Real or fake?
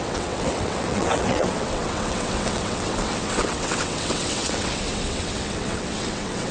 fake